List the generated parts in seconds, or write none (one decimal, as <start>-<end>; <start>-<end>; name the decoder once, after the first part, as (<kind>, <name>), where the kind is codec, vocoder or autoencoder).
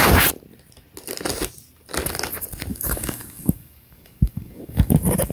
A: 2.7-5.3 (codec, DAC)